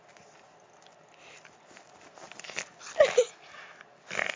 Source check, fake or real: real